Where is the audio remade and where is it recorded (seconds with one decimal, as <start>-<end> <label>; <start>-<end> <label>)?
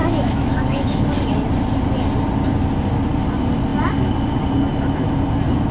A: 0.0-1.0 remade; 1.0-5.7 recorded